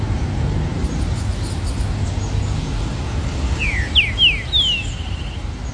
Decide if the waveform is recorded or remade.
recorded